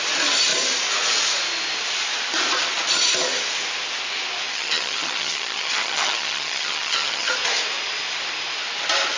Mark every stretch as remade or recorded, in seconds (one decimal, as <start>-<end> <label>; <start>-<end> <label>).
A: 0.0-4.5 recorded; 4.5-7.3 remade; 7.3-9.2 recorded